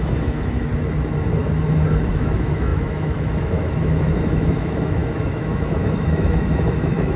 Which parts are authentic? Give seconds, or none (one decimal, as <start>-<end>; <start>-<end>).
0.7-2.0